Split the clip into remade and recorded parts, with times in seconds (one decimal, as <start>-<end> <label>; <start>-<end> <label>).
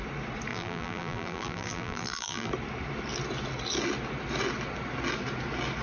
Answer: 0.0-0.5 recorded; 0.5-2.5 remade; 2.5-5.8 recorded